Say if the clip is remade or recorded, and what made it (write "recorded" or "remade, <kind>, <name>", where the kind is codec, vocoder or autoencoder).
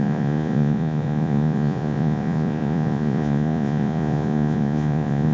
remade, vocoder, Vocos